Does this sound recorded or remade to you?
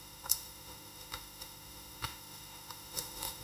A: remade